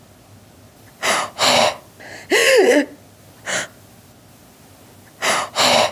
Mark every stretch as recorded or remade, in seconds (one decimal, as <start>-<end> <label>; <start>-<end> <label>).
0.0-5.9 recorded